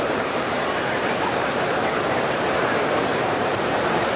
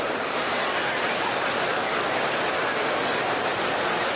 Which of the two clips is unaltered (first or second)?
second